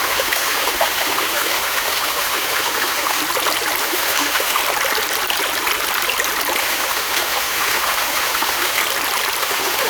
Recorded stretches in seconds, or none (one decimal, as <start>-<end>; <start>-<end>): 3.2-3.8; 4.6-6.6; 8.8-9.4